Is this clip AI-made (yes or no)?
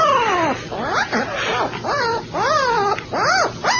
no